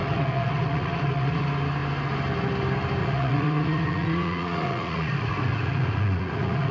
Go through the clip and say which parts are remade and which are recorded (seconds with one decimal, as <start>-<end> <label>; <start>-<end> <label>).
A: 0.0-1.4 remade; 1.4-3.0 recorded; 3.0-6.7 remade